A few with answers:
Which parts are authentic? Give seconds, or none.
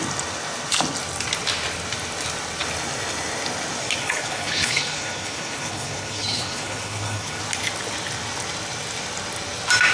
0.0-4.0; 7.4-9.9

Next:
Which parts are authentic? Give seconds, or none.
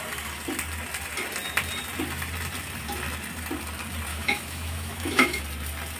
0.0-4.1; 5.4-6.0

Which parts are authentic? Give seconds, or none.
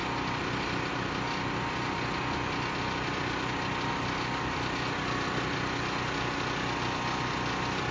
0.0-7.9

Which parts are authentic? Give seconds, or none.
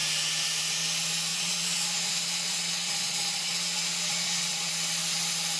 0.0-1.3; 4.7-5.6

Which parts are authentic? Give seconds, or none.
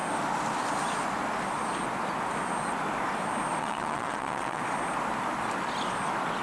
0.0-3.6; 4.6-6.4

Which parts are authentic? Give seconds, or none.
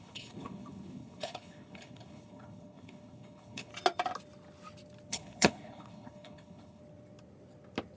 3.7-5.1; 6.8-8.0